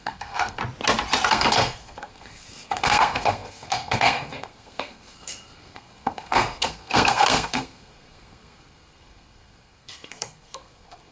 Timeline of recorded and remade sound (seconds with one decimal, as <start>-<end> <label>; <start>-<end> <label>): 0.0-0.6 remade; 0.6-1.3 recorded; 1.3-11.1 remade